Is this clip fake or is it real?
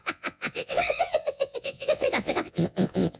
fake